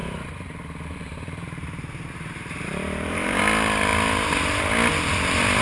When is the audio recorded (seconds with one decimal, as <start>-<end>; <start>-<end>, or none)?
3.4-5.6

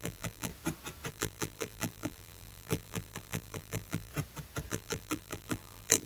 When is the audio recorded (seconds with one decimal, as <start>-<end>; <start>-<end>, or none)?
0.5-1.1; 4.1-4.7

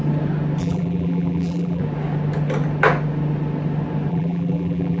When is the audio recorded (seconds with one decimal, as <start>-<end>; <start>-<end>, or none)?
0.0-0.6; 1.8-4.1

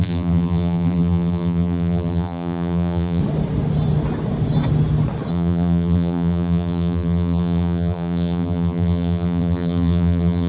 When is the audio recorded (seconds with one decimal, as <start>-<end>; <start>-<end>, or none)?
3.2-5.3

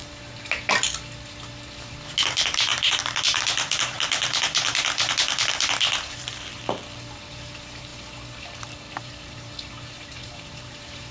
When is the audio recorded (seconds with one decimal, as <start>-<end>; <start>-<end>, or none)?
0.0-2.3; 6.5-7.3

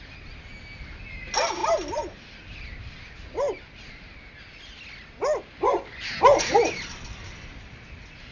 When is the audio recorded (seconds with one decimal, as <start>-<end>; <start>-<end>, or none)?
0.0-8.3

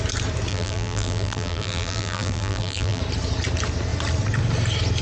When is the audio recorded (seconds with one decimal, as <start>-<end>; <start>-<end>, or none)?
0.0-0.5; 3.0-5.0